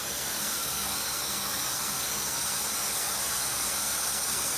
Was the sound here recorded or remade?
remade